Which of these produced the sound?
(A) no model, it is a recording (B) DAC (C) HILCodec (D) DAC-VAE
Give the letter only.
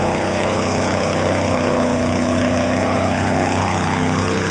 C